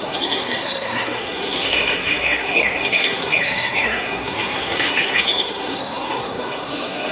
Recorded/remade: remade